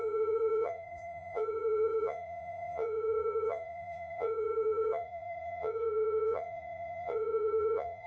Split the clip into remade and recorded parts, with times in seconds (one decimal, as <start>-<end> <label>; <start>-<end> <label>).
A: 0.0-8.1 remade